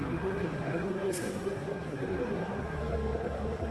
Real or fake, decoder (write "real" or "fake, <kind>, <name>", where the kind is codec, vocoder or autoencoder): fake, codec, SNAC